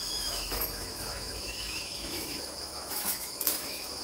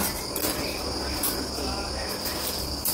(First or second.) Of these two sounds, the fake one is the first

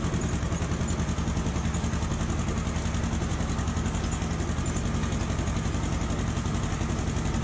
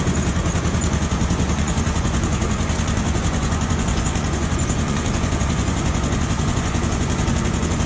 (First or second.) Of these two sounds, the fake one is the second